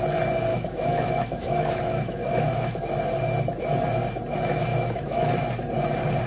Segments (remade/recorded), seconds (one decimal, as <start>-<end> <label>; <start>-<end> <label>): 0.0-0.5 recorded; 0.5-2.8 remade; 2.8-4.7 recorded; 4.7-5.3 remade; 5.3-6.3 recorded